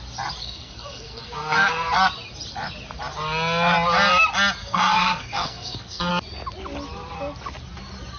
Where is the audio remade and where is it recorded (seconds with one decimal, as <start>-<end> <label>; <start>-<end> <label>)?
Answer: 0.0-0.4 recorded; 0.4-1.7 remade; 1.7-4.6 recorded; 4.6-6.1 remade; 6.1-8.2 recorded